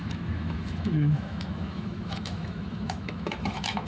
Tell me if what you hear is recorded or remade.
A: remade